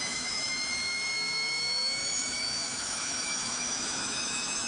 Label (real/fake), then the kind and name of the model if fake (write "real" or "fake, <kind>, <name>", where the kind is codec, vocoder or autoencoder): fake, autoencoder, DAC-VAE